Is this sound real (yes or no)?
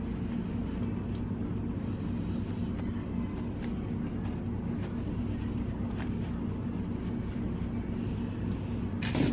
yes